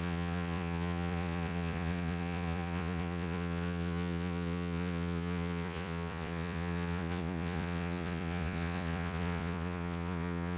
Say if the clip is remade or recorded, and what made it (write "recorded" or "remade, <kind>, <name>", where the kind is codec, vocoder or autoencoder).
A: remade, vocoder, Vocos